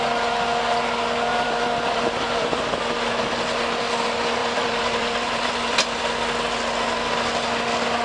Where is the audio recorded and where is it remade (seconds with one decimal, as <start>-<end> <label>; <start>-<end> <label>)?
0.0-1.3 recorded; 1.3-2.7 remade; 2.7-4.4 recorded; 4.4-6.0 remade; 6.0-8.0 recorded